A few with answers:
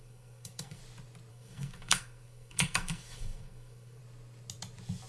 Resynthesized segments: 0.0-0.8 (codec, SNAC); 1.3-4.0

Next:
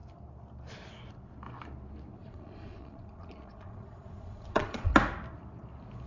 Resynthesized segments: 2.2-4.9 (vocoder, Vocos)

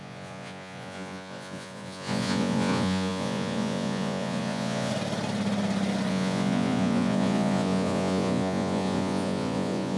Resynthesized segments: 0.0-4.9 (vocoder, Vocos); 6.1-10.0

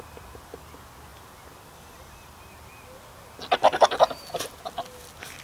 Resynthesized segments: none